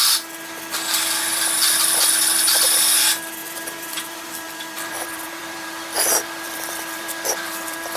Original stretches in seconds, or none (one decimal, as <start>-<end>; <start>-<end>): 0.0-1.3; 2.0-3.4